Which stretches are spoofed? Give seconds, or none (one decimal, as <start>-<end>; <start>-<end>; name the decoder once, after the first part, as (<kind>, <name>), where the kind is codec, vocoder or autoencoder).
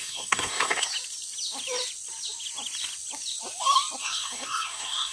0.0-0.9 (codec, SNAC); 4.0-5.1